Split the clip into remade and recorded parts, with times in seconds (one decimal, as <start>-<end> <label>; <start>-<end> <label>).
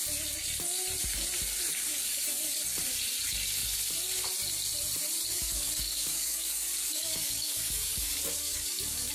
0.0-1.7 recorded; 1.7-2.6 remade; 2.6-5.3 recorded; 5.3-9.1 remade